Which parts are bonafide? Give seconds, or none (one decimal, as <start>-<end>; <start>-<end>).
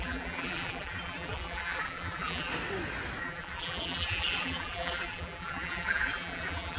2.5-3.2